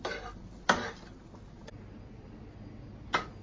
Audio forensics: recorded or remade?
recorded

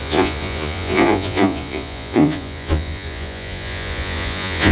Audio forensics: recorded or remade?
remade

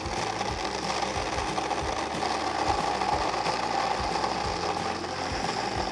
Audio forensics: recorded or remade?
recorded